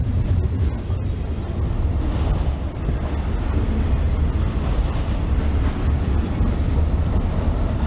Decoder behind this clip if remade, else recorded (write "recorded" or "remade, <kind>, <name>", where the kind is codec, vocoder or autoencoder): recorded